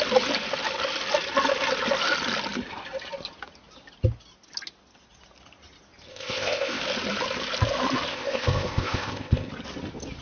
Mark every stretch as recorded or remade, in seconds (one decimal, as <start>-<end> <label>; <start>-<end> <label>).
0.0-6.1 recorded; 6.1-6.8 remade; 6.8-8.1 recorded; 8.1-9.5 remade; 9.5-10.2 recorded